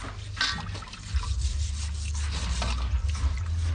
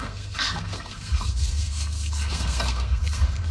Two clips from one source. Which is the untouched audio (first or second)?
first